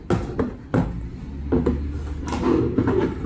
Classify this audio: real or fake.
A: real